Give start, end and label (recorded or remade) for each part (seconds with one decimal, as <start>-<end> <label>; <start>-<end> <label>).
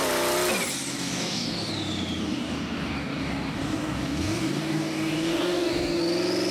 0.0-0.9 recorded; 0.9-1.7 remade; 1.7-2.2 recorded; 2.2-6.0 remade; 6.0-6.5 recorded